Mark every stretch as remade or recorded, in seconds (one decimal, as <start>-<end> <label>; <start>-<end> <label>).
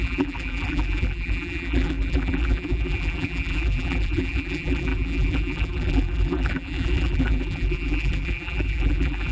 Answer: 0.0-9.3 remade